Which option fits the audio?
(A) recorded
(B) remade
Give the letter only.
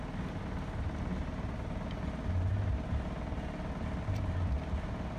A